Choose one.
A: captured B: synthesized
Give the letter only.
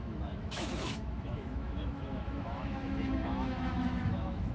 B